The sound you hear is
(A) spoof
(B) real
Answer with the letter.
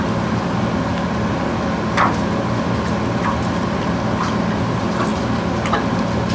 B